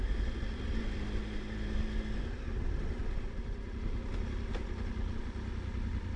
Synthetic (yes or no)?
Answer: no